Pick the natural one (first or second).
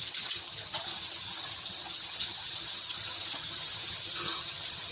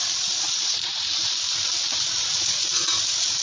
second